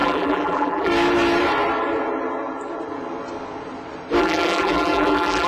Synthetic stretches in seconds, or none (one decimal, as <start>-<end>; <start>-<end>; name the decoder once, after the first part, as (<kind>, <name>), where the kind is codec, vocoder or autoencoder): 0.0-0.9 (vocoder, BigVGAN v2); 4.2-5.5